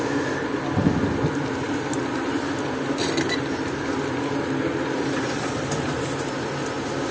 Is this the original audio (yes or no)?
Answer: yes